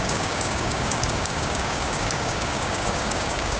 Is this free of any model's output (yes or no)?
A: no